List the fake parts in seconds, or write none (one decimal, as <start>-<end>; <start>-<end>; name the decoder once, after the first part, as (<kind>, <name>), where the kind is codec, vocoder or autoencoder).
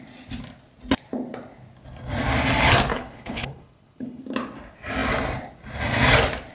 2.9-4.2 (codec, HILCodec)